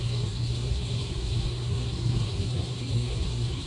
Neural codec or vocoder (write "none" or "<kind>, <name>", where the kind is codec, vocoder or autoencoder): codec, SNAC